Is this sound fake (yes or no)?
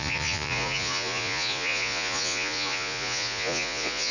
yes